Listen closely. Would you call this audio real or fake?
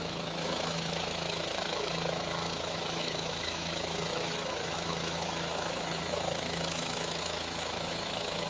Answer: fake